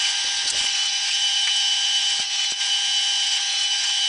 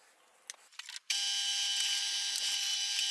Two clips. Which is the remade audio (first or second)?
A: first